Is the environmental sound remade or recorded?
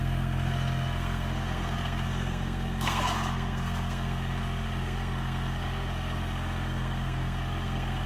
remade